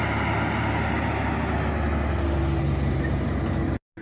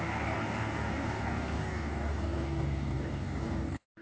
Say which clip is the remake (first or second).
second